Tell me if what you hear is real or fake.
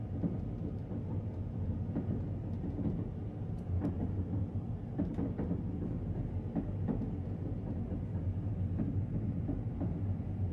real